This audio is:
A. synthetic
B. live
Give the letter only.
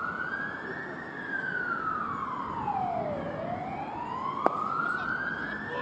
B